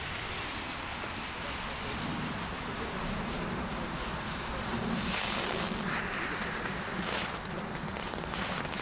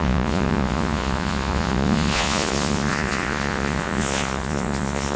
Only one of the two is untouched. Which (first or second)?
first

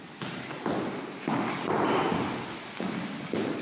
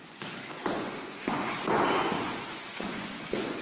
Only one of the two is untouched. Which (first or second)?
first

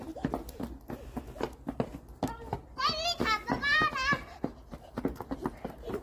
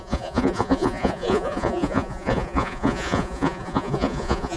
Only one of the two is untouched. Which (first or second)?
first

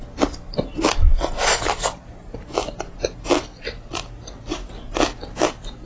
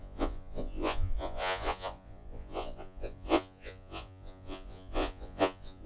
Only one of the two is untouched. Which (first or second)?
first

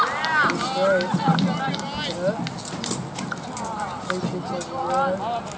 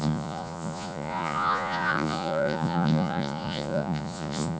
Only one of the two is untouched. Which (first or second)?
first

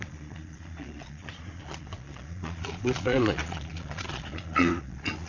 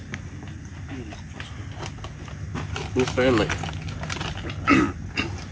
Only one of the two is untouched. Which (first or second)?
second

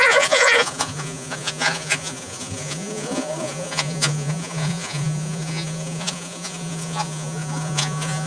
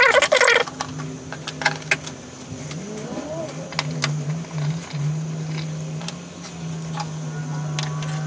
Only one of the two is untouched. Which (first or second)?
second